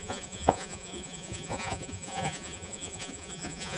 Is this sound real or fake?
fake